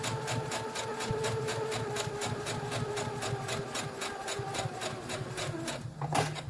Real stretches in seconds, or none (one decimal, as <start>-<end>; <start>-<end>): 0.0-6.5

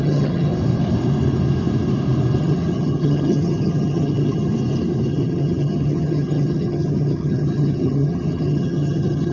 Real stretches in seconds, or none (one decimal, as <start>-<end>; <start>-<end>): 0.5-2.4; 4.5-5.1